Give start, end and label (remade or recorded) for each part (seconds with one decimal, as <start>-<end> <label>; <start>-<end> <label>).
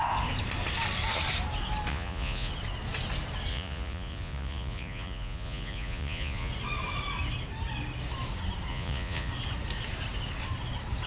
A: 0.0-1.9 recorded; 1.9-2.5 remade; 2.5-3.5 recorded; 3.5-6.5 remade; 6.5-8.7 recorded; 8.7-9.3 remade; 9.3-11.1 recorded